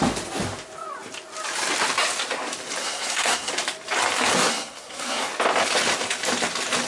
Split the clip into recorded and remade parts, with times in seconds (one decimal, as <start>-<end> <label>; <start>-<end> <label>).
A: 0.0-2.8 recorded; 2.8-3.5 remade; 3.5-4.5 recorded; 4.5-5.3 remade; 5.3-6.9 recorded